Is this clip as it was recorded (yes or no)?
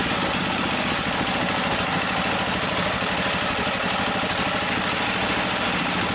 yes